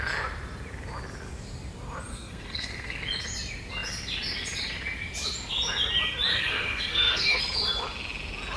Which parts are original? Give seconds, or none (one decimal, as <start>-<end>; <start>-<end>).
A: 0.0-2.1; 3.0-6.3; 7.4-8.6

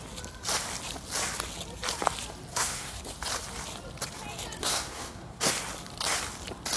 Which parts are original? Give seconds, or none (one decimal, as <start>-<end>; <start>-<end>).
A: 0.0-2.5; 3.0-4.6; 5.5-6.8

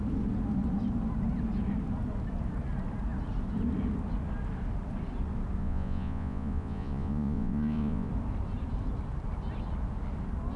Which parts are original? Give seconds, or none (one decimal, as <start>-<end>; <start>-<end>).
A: 0.0-5.6; 8.1-10.6

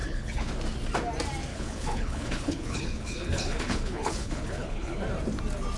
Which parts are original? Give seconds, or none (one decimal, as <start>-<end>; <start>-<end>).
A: 0.5-1.5; 5.0-5.8

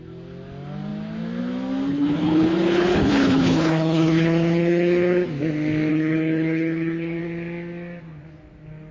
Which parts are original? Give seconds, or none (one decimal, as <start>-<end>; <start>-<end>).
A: 0.0-1.9; 5.3-5.9; 7.2-8.9

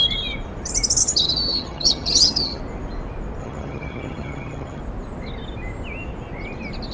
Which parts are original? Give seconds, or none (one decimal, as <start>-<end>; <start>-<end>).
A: 0.0-1.0; 2.6-3.4; 4.8-6.9

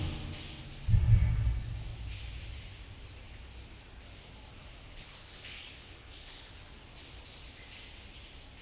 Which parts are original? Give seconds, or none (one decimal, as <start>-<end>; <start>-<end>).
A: 0.0-4.9; 6.5-8.6